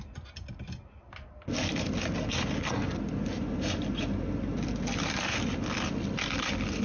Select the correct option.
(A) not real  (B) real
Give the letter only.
B